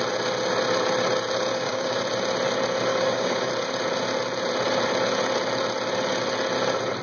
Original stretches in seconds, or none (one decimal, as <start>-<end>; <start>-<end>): 0.0-1.5; 2.0-2.9; 3.5-7.0